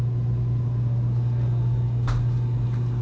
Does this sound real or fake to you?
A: real